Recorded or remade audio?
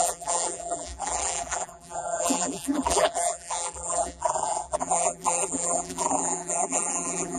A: remade